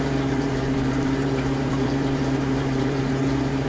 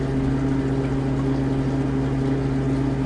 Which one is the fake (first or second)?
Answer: first